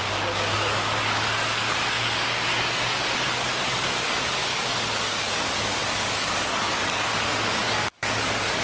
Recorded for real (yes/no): no